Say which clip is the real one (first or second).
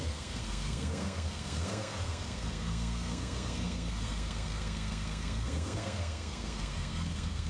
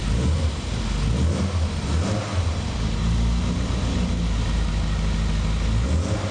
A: second